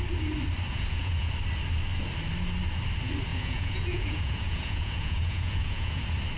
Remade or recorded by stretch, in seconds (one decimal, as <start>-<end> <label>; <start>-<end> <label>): 0.0-0.7 recorded; 0.7-1.3 remade; 1.3-3.3 recorded; 3.3-6.0 remade; 6.0-6.4 recorded

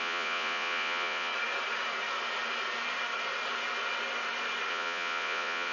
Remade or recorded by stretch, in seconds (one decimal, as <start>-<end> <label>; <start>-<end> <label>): 0.0-1.3 remade; 1.3-4.7 recorded; 4.7-5.7 remade

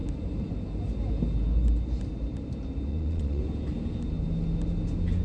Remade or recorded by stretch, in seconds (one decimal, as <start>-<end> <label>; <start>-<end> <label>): 0.0-2.9 recorded; 2.9-3.4 remade; 3.4-5.2 recorded

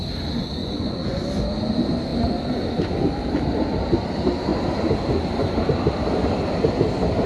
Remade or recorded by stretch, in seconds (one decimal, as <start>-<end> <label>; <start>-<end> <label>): 0.0-0.6 recorded; 0.6-1.2 remade; 1.2-7.3 recorded

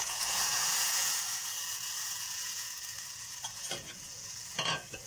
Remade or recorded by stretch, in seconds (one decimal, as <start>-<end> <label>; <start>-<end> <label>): 0.0-5.1 remade

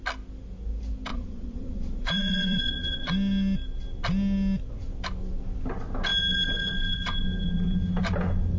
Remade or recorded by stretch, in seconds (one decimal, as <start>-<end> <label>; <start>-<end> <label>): 0.0-1.1 recorded; 1.1-3.1 remade; 3.1-8.6 recorded

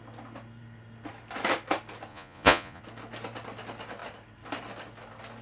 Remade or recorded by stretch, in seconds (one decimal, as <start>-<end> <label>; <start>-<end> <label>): 0.0-2.1 recorded; 2.1-2.8 remade; 2.8-5.4 recorded

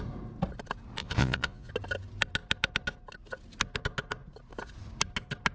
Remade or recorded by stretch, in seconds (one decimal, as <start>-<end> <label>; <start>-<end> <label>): 0.0-1.0 recorded; 1.0-1.7 remade; 1.7-5.5 recorded